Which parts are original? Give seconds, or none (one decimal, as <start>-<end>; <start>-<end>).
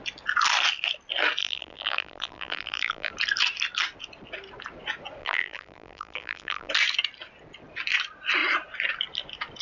0.0-1.4; 3.1-5.2; 6.7-9.6